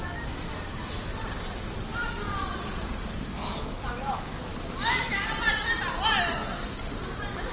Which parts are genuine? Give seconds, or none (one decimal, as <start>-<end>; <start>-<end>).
0.0-1.9; 2.9-7.5